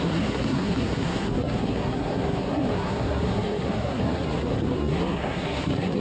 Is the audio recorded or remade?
remade